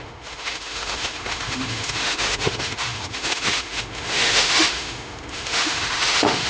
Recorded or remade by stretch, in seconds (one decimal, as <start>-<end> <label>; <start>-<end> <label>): 0.0-6.5 remade